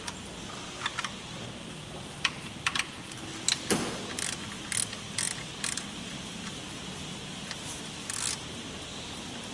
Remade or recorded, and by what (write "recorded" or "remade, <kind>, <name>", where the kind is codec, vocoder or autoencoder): recorded